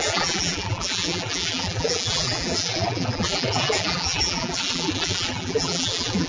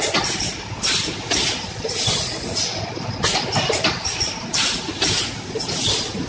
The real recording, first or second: second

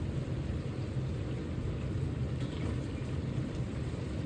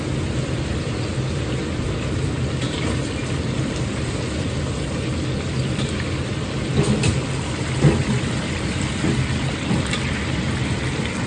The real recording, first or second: second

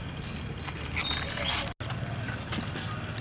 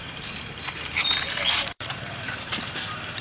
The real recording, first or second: first